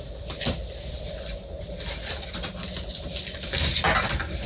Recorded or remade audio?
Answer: recorded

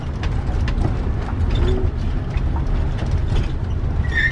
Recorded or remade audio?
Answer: recorded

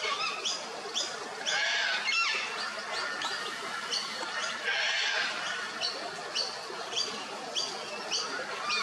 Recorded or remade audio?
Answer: recorded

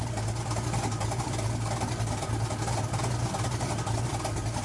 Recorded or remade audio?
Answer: recorded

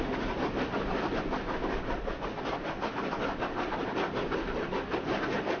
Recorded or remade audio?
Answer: recorded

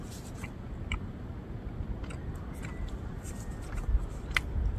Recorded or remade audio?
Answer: recorded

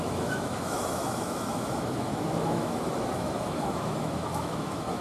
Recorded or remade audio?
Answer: remade